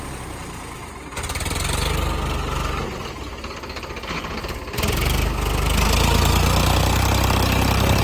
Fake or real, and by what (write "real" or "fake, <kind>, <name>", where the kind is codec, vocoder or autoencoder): real